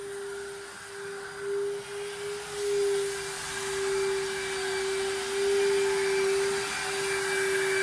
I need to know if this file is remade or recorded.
recorded